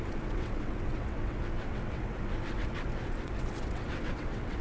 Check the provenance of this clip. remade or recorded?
remade